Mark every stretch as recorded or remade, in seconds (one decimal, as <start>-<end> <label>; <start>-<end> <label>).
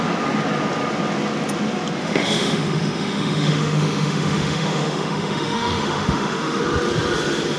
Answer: 0.0-2.0 recorded; 2.0-6.6 remade; 6.6-7.6 recorded